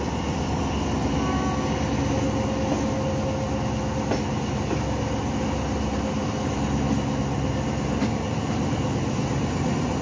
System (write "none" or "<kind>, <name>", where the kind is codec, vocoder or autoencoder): none